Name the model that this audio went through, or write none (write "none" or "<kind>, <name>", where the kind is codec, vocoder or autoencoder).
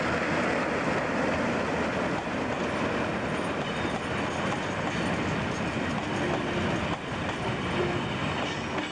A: none